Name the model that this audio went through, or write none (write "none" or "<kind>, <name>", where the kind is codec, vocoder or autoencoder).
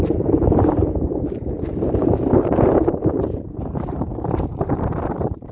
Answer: vocoder, BigVGAN v2